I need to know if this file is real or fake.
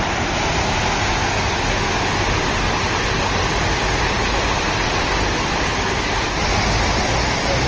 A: real